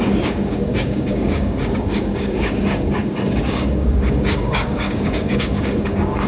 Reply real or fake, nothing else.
fake